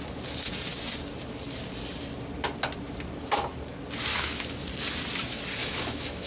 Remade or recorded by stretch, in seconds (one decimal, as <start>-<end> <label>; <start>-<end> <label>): 0.0-4.1 recorded; 4.1-4.6 remade; 4.6-5.6 recorded; 5.6-6.3 remade